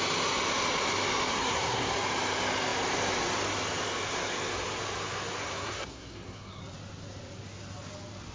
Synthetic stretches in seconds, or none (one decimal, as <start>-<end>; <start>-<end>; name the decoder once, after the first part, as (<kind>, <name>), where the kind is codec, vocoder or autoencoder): 1.3-1.9 (codec, SNAC); 5.4-6.6